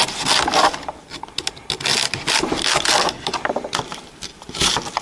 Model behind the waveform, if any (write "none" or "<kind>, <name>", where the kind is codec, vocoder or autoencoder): none